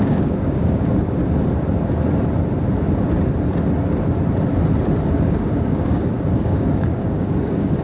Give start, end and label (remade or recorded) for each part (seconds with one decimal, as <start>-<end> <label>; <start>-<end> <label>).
0.0-1.2 remade; 1.2-5.1 recorded; 5.1-7.8 remade